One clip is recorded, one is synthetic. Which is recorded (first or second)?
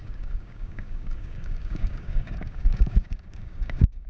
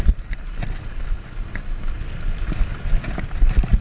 second